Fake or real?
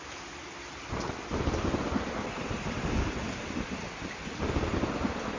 real